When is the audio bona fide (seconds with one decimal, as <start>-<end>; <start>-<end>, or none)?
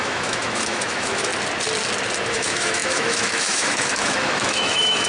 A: 1.3-2.3